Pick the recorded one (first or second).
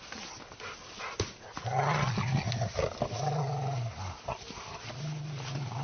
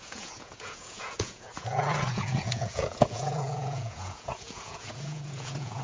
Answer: first